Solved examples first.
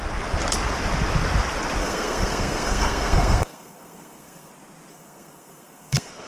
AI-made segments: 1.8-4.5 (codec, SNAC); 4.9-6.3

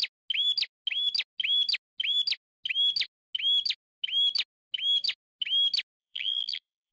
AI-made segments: 6.0-6.9 (vocoder, BigVGAN v2)

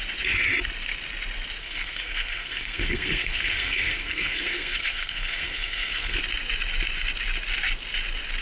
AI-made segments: 1.6-6.2 (codec, SNAC)

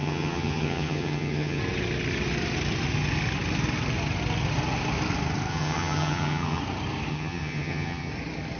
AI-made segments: 0.0-1.6 (vocoder, HiFi-GAN); 5.5-6.6; 7.1-8.1

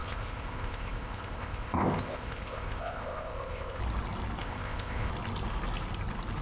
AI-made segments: 0.0-3.8 (codec, ZipCodec); 4.4-5.1

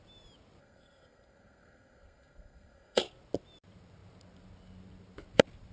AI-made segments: 0.6-3.0 (codec, SNAC)

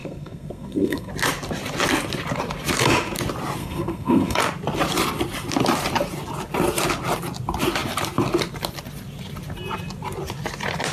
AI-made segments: 0.0-1.1 (codec, SNAC); 3.6-4.4